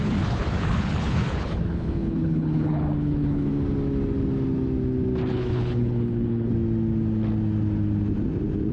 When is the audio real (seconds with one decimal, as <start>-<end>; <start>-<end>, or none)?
3.5-5.3; 6.5-8.7